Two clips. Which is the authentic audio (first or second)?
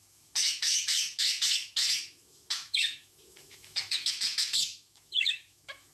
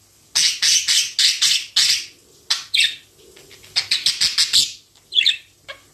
second